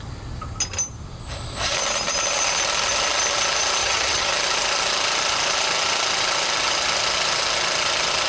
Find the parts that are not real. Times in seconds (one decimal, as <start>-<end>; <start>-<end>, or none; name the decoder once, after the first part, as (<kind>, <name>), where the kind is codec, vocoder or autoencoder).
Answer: 3.8-4.3 (vocoder, HiFi-GAN)